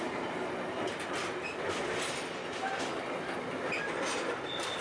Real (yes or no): yes